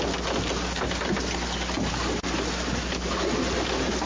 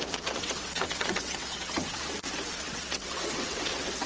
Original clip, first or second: first